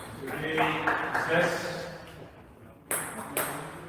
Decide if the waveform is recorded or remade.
recorded